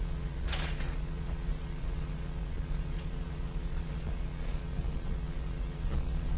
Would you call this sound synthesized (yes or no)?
yes